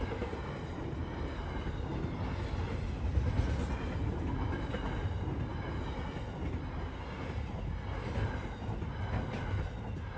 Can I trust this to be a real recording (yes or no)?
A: yes